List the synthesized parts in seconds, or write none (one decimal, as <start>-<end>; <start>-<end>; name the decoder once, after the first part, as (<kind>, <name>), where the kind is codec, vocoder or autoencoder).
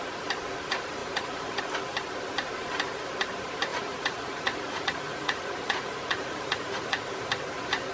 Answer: 1.0-1.6 (vocoder, Vocos); 3.7-7.0